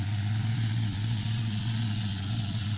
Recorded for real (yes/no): no